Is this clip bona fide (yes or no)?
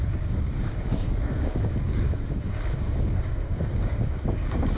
no